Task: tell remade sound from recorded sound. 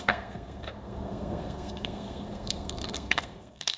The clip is remade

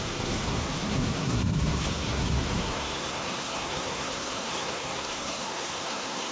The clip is remade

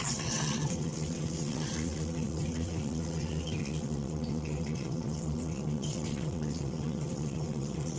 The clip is remade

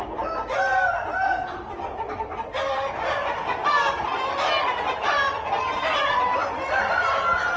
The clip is recorded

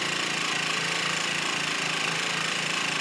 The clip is remade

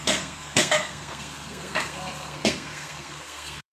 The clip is remade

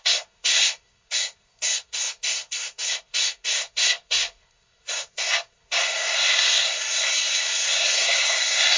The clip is remade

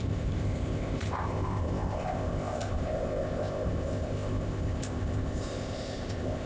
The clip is remade